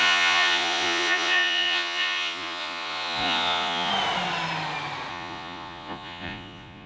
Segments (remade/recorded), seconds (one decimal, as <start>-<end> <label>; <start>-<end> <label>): 0.0-3.9 remade; 3.9-5.1 recorded; 5.1-6.9 remade

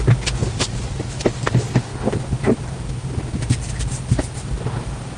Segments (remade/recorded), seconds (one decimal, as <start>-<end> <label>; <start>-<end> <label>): 0.0-5.2 recorded

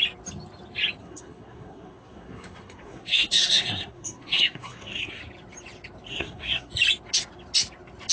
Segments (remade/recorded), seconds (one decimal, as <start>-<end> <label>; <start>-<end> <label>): 0.0-1.0 recorded; 1.0-5.2 remade; 5.2-6.1 recorded; 6.1-6.7 remade; 6.7-8.1 recorded

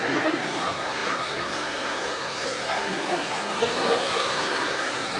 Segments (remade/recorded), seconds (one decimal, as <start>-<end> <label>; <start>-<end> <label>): 0.0-5.2 remade

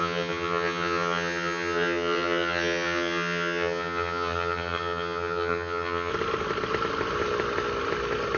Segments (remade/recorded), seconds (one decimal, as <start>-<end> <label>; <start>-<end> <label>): 0.0-6.1 remade; 6.1-8.4 recorded

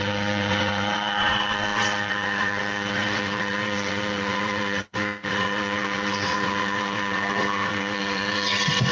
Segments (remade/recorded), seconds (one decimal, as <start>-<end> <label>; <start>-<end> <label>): 0.0-8.9 remade

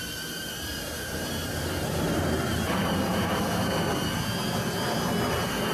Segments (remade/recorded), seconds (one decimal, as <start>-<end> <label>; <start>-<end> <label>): 0.0-3.4 remade; 3.4-5.7 recorded